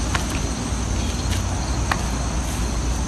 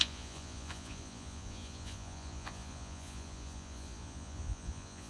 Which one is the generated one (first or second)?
second